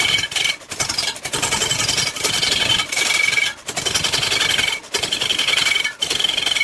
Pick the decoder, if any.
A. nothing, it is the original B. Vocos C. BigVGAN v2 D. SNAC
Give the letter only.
A